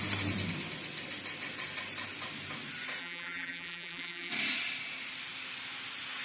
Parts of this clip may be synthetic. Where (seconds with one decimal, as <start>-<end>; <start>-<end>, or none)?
3.0-4.3